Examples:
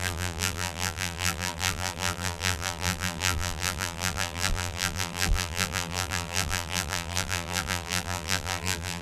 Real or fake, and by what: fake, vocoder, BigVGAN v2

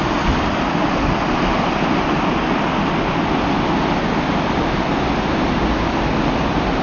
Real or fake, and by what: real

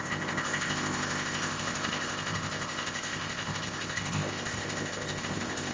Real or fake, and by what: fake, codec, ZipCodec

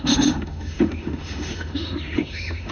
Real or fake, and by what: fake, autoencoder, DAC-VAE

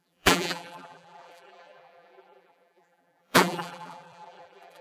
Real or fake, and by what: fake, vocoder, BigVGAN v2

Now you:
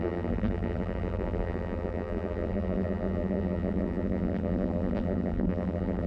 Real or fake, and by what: fake, vocoder, BigVGAN v2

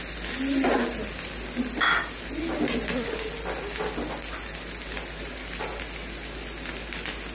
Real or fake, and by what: real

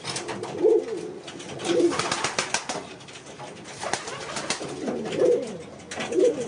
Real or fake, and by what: real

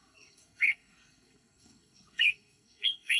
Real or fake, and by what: fake, codec, SNAC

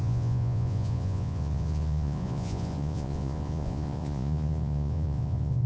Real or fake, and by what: fake, vocoder, Vocos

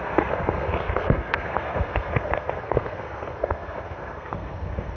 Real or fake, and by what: fake, codec, SNAC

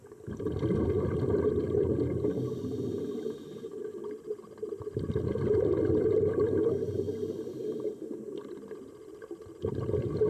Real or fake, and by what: real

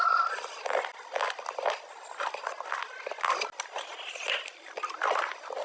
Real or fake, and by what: real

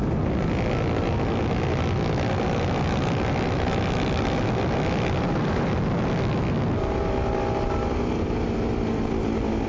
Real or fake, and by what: real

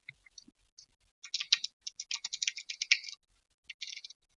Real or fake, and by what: real